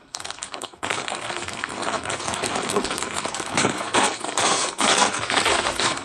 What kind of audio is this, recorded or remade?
remade